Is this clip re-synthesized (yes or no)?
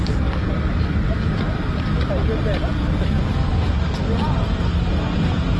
no